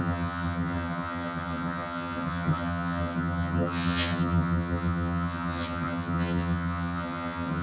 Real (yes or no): no